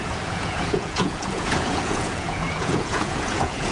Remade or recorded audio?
remade